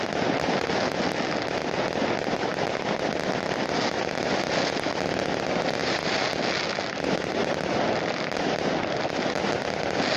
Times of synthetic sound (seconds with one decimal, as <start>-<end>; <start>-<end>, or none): none